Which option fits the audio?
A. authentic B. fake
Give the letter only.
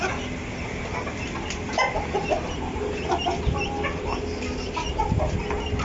A